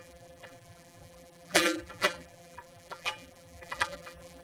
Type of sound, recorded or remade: remade